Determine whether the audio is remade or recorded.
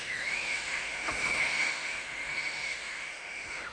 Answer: remade